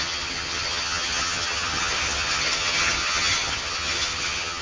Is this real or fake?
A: fake